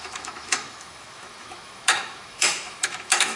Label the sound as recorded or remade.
remade